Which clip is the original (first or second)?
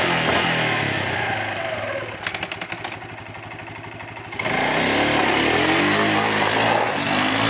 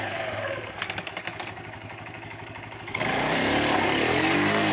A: first